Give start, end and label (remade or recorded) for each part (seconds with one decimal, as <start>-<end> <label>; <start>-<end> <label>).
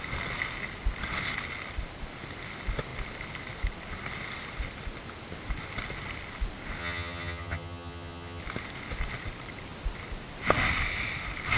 0.0-6.8 recorded; 6.8-8.4 remade; 8.4-11.6 recorded